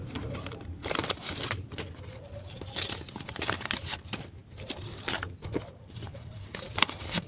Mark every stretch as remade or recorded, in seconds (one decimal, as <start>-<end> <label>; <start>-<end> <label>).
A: 0.0-1.3 remade; 1.3-7.3 recorded